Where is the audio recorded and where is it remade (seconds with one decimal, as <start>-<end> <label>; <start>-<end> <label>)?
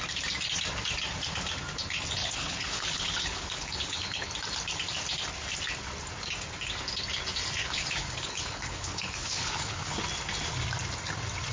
0.0-2.2 recorded; 2.2-4.3 remade; 4.3-7.6 recorded; 7.6-10.0 remade; 10.0-11.5 recorded